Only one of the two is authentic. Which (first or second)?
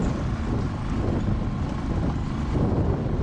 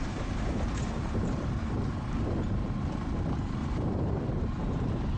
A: first